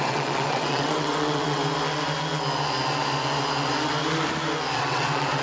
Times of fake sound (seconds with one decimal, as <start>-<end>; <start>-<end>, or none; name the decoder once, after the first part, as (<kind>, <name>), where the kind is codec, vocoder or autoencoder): 0.0-1.6 (vocoder, WaveNeXt); 4.8-5.4